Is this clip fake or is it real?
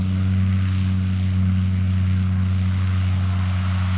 real